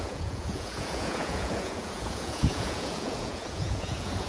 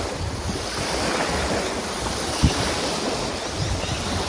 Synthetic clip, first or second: first